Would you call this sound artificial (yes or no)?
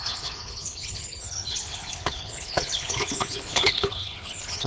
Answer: yes